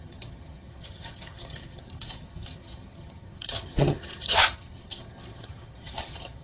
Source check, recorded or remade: remade